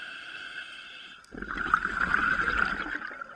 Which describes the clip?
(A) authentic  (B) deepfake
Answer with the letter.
A